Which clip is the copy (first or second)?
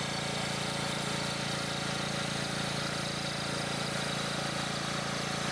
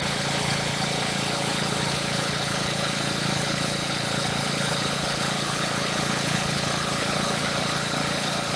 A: second